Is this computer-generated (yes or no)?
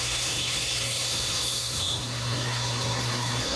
yes